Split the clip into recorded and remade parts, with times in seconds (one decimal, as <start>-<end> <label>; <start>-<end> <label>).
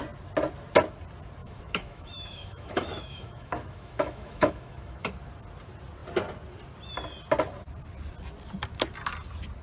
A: 0.0-1.4 recorded; 1.4-5.1 remade; 5.1-9.6 recorded